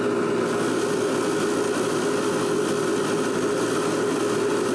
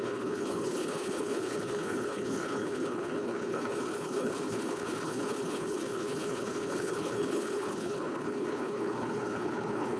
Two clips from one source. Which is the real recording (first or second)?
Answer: first